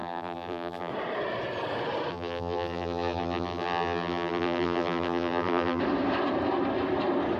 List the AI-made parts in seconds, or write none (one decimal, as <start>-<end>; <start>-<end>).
0.0-0.9; 2.1-5.8